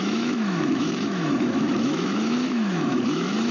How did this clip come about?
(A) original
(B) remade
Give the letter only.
B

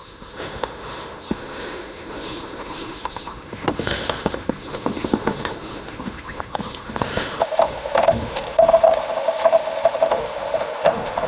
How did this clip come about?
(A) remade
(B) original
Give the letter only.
A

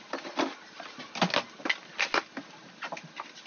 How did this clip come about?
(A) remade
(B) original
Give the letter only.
B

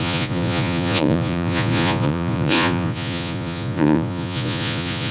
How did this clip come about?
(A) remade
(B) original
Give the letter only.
A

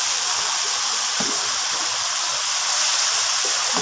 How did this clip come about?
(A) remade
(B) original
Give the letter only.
B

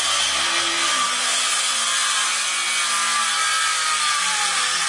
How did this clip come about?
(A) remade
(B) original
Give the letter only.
B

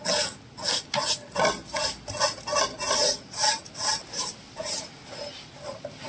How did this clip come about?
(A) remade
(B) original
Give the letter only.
B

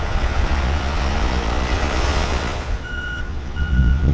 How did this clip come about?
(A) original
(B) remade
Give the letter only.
B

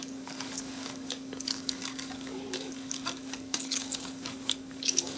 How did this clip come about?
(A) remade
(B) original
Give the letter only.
A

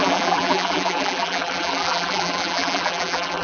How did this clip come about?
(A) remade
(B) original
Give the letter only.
A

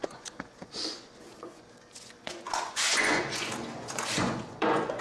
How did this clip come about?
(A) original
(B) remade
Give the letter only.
B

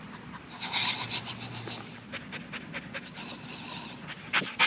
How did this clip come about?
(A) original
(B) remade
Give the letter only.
A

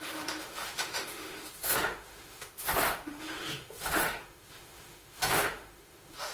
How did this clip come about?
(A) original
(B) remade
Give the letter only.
B